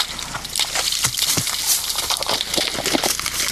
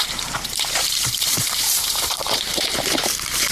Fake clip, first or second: second